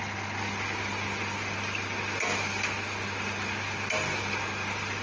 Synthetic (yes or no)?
no